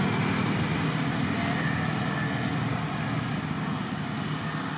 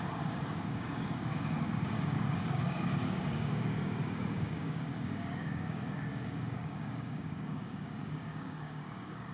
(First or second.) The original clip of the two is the first